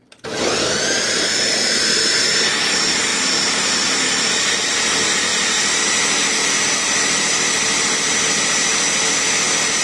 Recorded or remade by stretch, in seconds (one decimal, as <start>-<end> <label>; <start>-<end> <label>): 0.0-9.8 recorded